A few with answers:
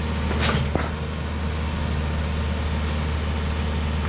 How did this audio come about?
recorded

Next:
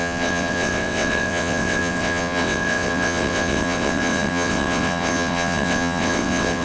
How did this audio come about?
remade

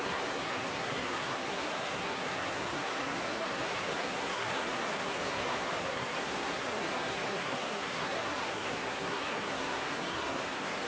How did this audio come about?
remade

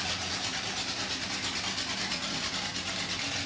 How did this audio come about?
recorded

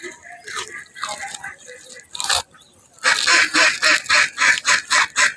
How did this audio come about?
recorded